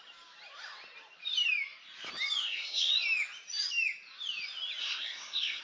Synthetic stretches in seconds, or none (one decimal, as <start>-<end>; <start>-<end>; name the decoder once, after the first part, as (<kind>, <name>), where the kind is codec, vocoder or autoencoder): 2.4-2.9 (codec, SNAC); 4.8-5.6